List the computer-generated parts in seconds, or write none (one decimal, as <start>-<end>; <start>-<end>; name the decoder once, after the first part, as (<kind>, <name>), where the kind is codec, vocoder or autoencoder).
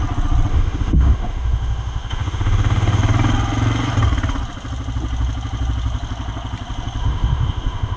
0.5-3.0 (autoencoder, DAC-VAE); 7.0-8.0